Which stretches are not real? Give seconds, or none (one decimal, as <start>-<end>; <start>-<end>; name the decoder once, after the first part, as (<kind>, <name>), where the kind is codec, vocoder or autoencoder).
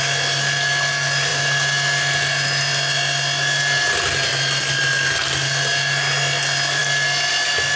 none